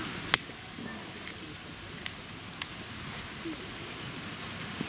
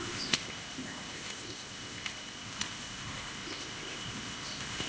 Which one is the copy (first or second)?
second